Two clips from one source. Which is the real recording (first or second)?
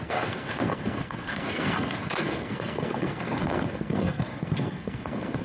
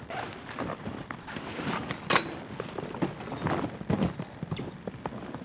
second